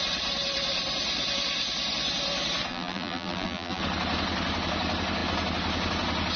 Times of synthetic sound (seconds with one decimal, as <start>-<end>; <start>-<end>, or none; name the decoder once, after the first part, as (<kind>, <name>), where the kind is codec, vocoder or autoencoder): 2.7-3.8 (vocoder, BigVGAN v2)